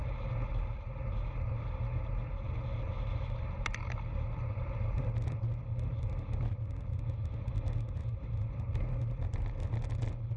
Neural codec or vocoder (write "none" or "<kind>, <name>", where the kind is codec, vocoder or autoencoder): none